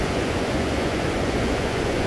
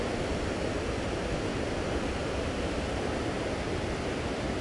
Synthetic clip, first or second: first